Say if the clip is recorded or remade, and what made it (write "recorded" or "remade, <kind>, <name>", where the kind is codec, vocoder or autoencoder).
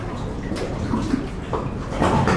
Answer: recorded